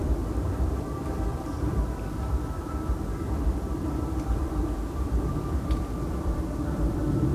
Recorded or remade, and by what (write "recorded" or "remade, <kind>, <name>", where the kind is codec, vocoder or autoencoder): remade, vocoder, BigVGAN v2